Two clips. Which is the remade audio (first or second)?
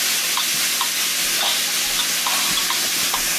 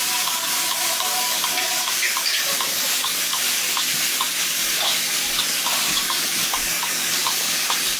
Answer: second